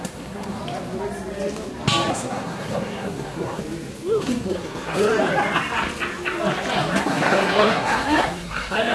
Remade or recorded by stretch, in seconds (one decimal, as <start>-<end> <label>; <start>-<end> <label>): 0.0-0.6 remade; 0.6-2.1 recorded; 2.1-3.6 remade; 3.6-4.2 recorded; 4.2-5.1 remade; 5.1-7.0 recorded; 7.0-8.9 remade